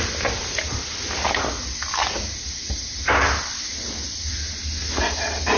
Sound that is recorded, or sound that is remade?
recorded